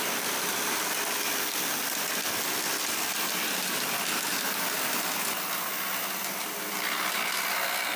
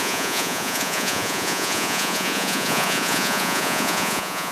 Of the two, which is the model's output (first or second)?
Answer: second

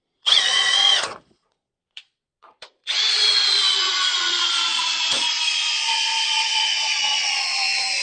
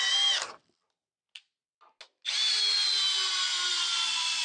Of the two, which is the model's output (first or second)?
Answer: first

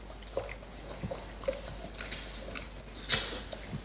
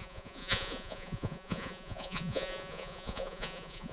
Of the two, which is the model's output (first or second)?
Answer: second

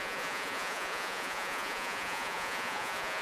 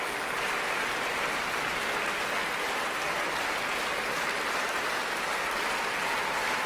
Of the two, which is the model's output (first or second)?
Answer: first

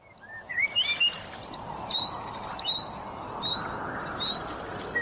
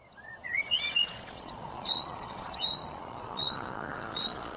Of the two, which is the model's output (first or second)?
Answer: second